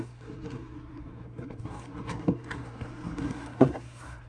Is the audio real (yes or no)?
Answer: no